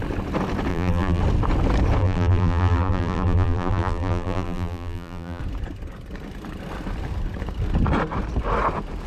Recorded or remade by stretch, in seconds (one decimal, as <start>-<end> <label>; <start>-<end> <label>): 0.0-0.7 recorded; 0.7-1.2 remade; 1.2-2.0 recorded; 2.0-5.4 remade; 5.4-9.1 recorded